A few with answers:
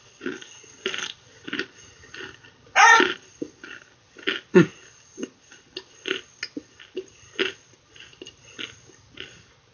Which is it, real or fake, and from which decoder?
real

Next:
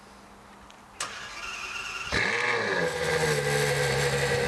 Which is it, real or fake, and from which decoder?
real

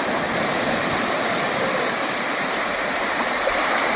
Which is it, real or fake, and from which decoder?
real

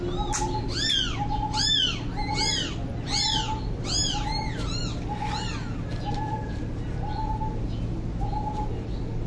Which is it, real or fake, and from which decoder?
real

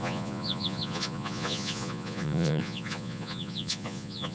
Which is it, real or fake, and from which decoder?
fake, vocoder, Vocos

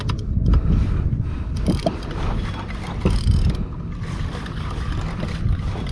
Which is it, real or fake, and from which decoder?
real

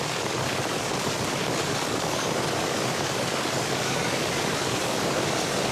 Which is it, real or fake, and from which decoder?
fake, codec, DAC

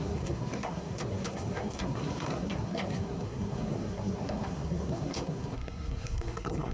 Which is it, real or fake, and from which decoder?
fake, codec, SNAC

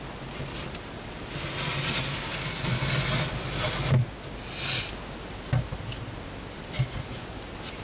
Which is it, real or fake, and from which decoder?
real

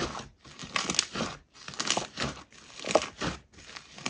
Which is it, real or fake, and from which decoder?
real